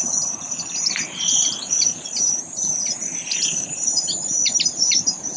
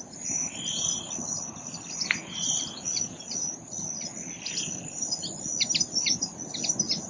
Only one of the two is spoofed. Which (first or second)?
first